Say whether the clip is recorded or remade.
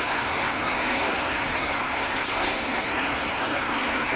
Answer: remade